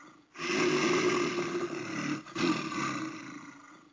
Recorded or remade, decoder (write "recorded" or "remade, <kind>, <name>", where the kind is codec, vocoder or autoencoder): recorded